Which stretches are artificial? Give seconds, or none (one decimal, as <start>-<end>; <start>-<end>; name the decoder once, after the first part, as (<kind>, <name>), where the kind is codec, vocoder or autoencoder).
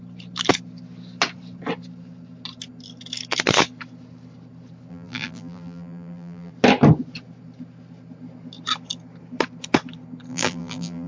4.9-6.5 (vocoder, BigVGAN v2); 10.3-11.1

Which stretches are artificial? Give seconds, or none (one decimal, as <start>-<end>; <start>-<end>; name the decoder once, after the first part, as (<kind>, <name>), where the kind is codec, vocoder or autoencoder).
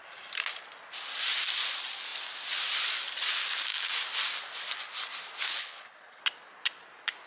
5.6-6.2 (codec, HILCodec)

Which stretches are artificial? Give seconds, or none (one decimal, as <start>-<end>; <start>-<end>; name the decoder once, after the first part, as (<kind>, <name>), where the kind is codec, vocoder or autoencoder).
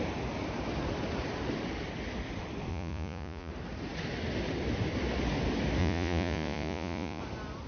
2.7-3.5 (vocoder, Vocos); 5.8-7.2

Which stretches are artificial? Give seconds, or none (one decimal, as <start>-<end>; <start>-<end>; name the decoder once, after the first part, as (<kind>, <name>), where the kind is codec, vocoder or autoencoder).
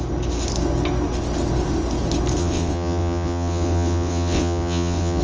2.4-5.2 (vocoder, WaveNeXt)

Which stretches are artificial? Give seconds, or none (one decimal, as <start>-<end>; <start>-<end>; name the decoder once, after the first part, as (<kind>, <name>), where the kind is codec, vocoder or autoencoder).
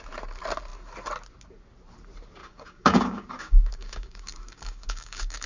2.4-5.5 (codec, DAC)